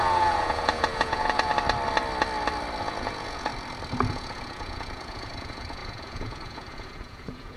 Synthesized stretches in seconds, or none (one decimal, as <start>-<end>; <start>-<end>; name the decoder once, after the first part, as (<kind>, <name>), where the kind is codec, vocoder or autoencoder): 0.0-1.5 (vocoder, Vocos); 2.8-3.5; 4.1-7.6